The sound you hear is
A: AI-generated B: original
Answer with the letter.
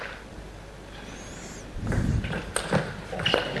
B